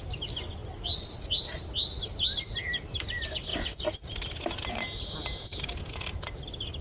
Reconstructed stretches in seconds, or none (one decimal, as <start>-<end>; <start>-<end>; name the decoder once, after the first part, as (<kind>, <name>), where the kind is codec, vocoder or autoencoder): 0.6-1.4 (vocoder, BigVGAN v2)